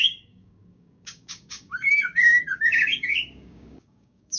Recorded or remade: remade